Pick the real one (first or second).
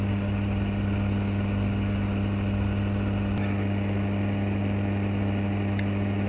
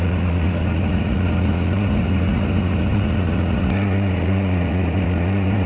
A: first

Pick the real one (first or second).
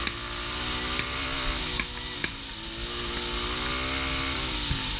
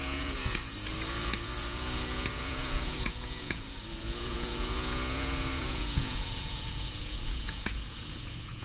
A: first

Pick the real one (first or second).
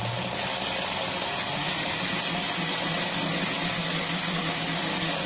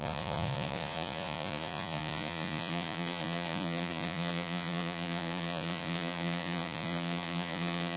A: first